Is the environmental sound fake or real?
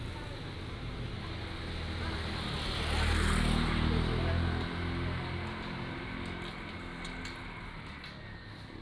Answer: real